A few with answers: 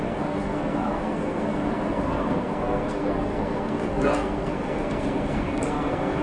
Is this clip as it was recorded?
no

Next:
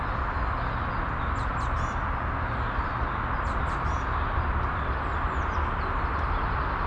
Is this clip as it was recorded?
yes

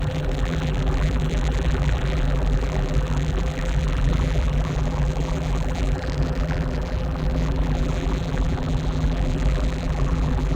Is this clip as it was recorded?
no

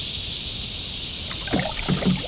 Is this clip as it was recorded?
yes